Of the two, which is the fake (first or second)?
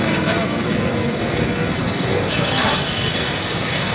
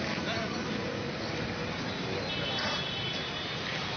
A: first